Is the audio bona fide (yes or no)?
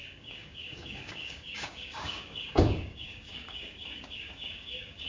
no